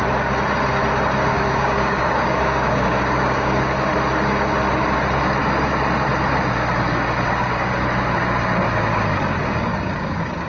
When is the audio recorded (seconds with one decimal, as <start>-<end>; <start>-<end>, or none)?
0.0-1.3; 3.9-9.4